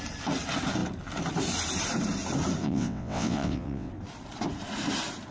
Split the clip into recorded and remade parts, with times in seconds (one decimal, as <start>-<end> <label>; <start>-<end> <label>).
0.0-2.6 recorded; 2.6-3.9 remade; 3.9-5.3 recorded